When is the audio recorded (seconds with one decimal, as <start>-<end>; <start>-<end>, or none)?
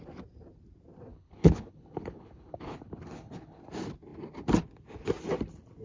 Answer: 0.0-1.1; 3.6-5.8